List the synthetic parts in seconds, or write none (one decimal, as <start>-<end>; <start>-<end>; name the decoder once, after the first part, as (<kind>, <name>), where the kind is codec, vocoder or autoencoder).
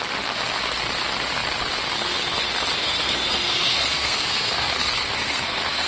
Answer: 2.8-5.9 (codec, SNAC)